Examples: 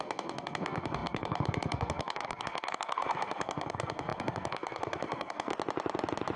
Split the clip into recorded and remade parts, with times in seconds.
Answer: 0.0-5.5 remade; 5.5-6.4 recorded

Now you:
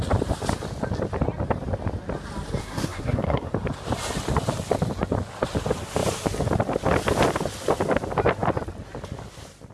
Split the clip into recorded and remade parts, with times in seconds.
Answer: 0.0-2.6 recorded; 2.6-3.5 remade; 3.5-9.7 recorded